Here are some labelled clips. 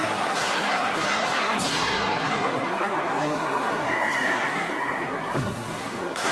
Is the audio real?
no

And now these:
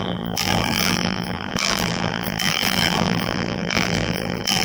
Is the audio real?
no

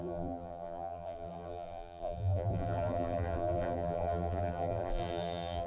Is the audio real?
no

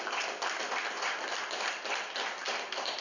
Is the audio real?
yes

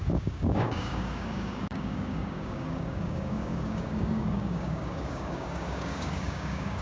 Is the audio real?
no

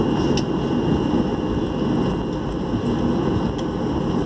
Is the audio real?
yes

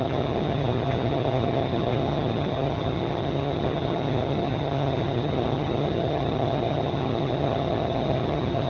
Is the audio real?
no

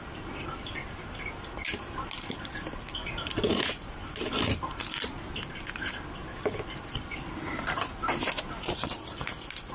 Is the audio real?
yes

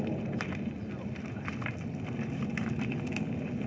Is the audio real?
yes